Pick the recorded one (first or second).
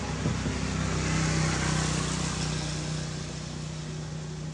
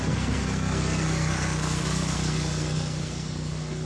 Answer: first